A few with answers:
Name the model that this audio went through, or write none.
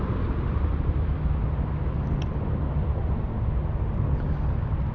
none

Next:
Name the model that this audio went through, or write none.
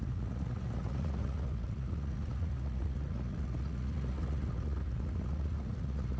vocoder, Vocos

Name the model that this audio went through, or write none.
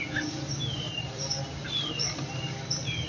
none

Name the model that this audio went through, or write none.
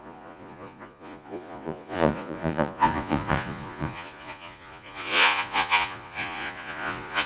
vocoder, Vocos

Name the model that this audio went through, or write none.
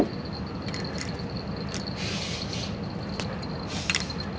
none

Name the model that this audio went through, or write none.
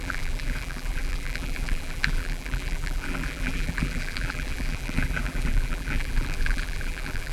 vocoder, BigVGAN v2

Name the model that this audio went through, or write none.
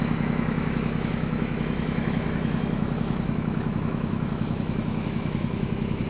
autoencoder, DAC-VAE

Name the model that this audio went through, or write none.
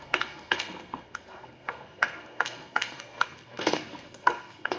codec, SNAC